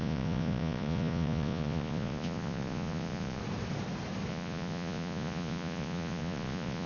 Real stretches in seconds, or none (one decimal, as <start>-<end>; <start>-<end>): 3.4-4.3